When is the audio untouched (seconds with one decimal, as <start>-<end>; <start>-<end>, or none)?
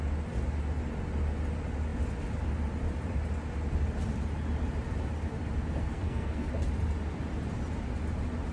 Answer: 0.0-5.8; 6.5-8.5